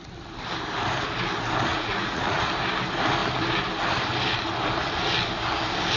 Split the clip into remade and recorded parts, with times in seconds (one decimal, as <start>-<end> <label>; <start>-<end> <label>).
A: 0.0-1.7 recorded; 1.7-2.4 remade; 2.4-6.0 recorded